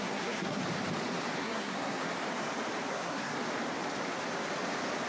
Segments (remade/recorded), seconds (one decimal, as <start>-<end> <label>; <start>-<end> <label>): 0.0-0.6 remade; 0.6-1.4 recorded; 1.4-2.1 remade; 2.1-2.9 recorded; 2.9-3.3 remade; 3.3-5.1 recorded